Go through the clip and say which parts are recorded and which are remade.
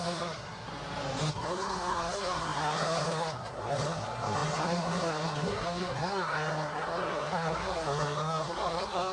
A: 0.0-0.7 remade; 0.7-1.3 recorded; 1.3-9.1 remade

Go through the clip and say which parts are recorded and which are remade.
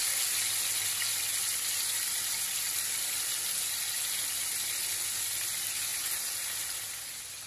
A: 0.0-7.5 recorded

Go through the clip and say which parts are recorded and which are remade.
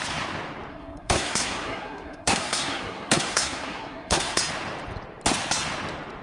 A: 0.0-0.7 recorded; 0.7-4.4 remade; 4.4-6.2 recorded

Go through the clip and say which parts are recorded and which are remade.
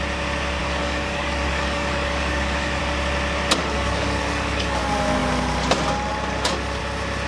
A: 0.0-0.6 recorded; 0.6-2.8 remade; 2.8-3.6 recorded; 3.6-4.8 remade; 4.8-7.3 recorded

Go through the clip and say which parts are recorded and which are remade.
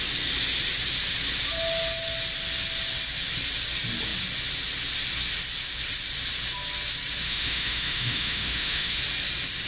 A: 0.0-7.2 recorded; 7.2-9.0 remade; 9.0-9.7 recorded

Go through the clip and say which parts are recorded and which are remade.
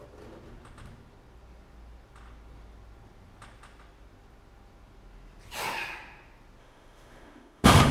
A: 0.0-6.6 recorded; 6.6-7.9 remade